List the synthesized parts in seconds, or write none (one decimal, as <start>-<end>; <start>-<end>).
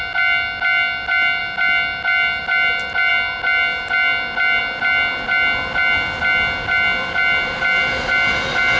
none